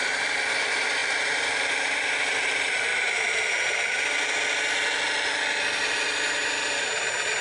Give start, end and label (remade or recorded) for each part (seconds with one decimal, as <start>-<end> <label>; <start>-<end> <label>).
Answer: 0.0-0.6 recorded; 0.6-2.9 remade; 2.9-6.6 recorded; 6.6-7.4 remade

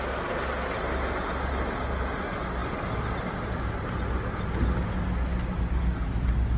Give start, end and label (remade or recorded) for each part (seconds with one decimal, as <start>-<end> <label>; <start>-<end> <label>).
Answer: 0.0-2.6 recorded; 2.6-3.7 remade; 3.7-5.3 recorded; 5.3-5.8 remade; 5.8-6.6 recorded

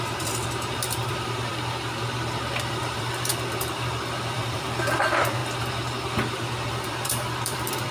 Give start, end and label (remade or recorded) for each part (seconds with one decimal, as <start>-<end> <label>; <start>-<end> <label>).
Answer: 0.0-1.5 remade; 1.5-2.7 recorded; 2.7-3.3 remade; 3.3-4.3 recorded; 4.3-5.4 remade; 5.4-6.7 recorded; 6.7-7.9 remade

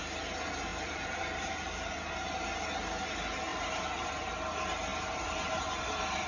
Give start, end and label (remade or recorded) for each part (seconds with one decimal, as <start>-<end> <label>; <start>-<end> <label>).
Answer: 0.0-0.7 recorded; 0.7-2.1 remade; 2.1-3.5 recorded; 3.5-4.1 remade; 4.1-6.3 recorded

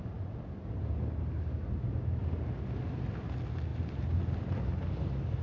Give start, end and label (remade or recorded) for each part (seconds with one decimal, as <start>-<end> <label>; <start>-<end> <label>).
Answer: 0.0-3.7 recorded; 3.7-4.2 remade; 4.2-5.4 recorded